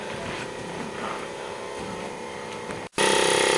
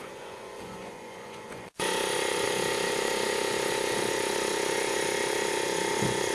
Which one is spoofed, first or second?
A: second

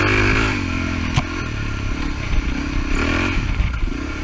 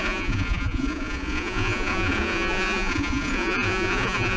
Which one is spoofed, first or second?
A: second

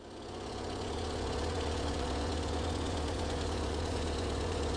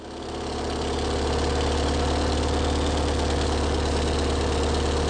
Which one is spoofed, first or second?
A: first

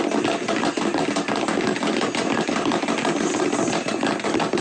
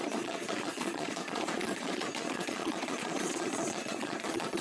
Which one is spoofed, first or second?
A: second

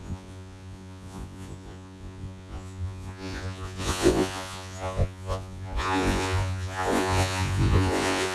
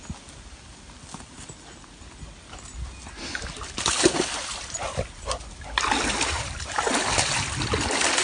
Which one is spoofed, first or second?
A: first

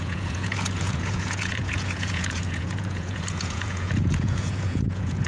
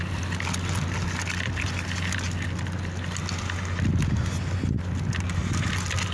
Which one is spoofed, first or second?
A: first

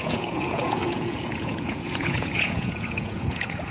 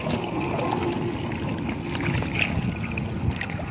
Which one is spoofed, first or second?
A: first